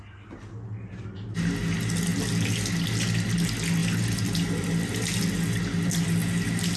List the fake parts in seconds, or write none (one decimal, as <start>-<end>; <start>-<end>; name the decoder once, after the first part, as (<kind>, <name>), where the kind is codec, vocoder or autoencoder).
none